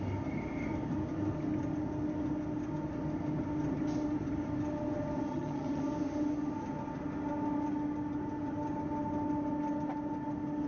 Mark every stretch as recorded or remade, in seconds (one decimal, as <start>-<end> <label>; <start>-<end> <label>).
0.0-5.3 recorded; 5.3-5.8 remade; 5.8-10.7 recorded